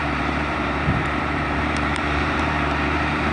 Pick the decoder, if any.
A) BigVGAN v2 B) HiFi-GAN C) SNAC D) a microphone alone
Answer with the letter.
A